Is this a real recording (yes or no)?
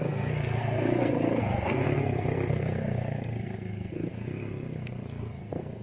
no